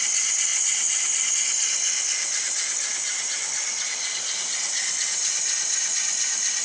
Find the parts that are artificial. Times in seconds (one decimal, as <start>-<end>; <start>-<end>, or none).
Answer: 0.5-1.3